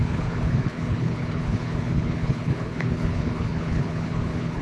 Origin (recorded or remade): remade